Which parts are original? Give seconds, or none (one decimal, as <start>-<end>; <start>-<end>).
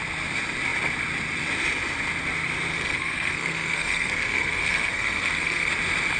0.0-2.7; 5.7-6.2